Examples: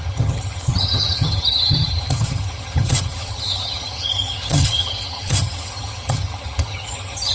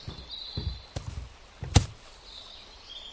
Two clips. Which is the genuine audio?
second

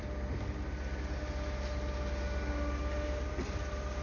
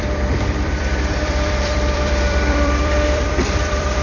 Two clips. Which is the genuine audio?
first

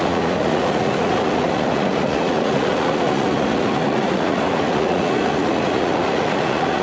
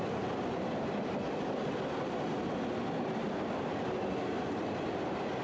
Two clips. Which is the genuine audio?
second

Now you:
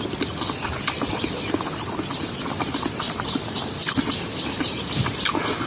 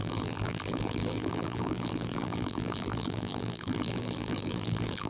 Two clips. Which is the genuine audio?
first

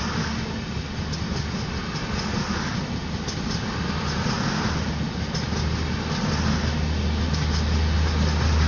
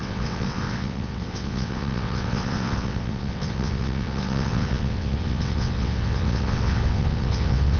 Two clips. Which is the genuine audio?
first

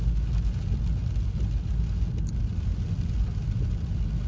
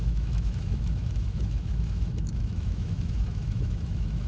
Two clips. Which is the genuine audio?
first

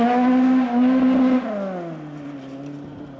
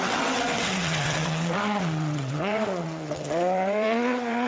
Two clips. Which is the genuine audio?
first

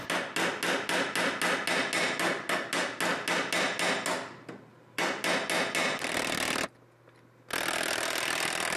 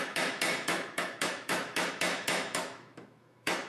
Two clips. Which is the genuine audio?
first